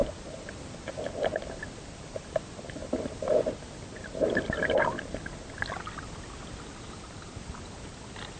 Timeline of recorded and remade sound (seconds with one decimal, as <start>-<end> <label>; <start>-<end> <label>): 0.0-2.8 recorded; 2.8-3.4 remade; 3.4-8.4 recorded